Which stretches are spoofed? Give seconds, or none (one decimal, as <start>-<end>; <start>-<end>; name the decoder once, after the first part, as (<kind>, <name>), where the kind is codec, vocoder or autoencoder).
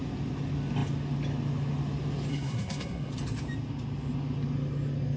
2.3-3.1 (codec, SNAC)